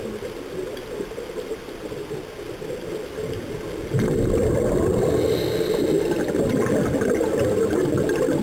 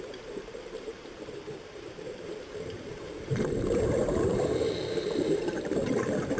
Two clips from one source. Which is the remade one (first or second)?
second